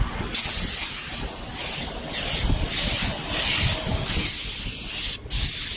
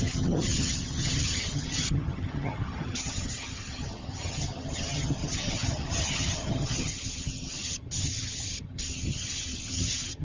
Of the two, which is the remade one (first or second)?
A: second